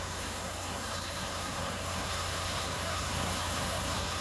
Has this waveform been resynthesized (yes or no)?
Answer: yes